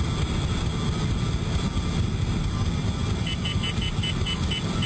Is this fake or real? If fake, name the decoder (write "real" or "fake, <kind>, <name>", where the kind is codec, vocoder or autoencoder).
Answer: real